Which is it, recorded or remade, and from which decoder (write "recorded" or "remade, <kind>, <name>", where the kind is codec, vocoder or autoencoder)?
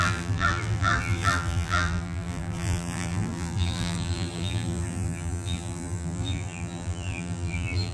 remade, vocoder, BigVGAN v2